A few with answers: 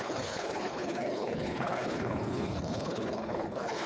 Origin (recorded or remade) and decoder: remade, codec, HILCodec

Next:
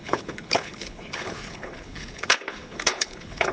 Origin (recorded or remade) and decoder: remade, codec, HILCodec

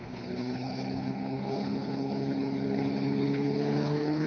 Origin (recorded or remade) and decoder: remade, codec, HILCodec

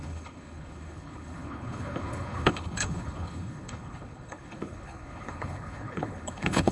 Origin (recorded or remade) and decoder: remade, codec, HILCodec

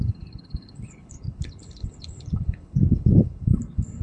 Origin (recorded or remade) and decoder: remade, codec, HILCodec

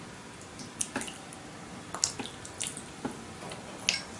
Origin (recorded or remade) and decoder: recorded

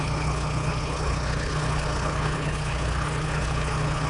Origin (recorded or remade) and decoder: remade, codec, HILCodec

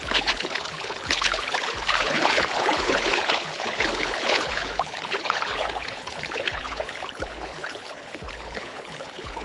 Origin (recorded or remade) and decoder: remade, codec, HILCodec